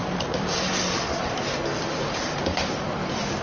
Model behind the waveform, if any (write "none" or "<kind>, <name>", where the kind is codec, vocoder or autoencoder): vocoder, BigVGAN v2